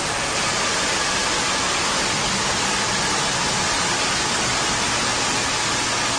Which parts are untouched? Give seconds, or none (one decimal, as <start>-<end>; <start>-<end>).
0.0-6.2

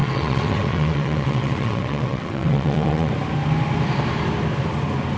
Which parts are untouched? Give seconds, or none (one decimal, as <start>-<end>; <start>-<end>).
3.1-5.2